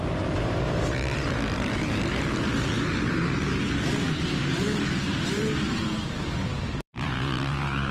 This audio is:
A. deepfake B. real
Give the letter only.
A